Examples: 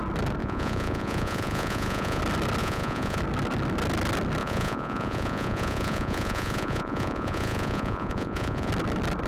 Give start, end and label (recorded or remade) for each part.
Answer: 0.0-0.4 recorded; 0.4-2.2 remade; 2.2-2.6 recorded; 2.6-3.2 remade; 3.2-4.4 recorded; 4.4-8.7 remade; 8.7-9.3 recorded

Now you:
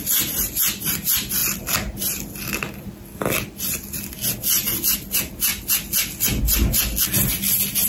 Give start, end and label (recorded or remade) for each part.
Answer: 0.0-7.9 recorded